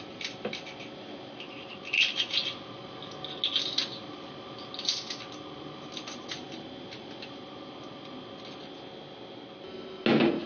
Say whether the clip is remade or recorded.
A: recorded